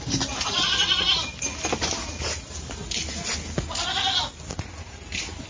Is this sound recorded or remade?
recorded